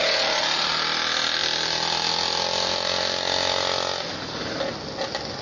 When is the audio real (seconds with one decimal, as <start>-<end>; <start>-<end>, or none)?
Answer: 0.0-5.4